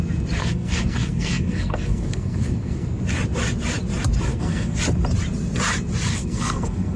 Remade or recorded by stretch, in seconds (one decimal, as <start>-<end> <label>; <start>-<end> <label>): 0.0-0.4 recorded; 0.4-3.0 remade; 3.0-4.3 recorded; 4.3-4.8 remade; 4.8-6.1 recorded; 6.1-7.0 remade